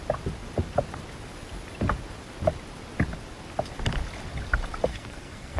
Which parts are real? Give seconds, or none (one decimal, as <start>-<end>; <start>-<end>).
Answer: 0.0-4.9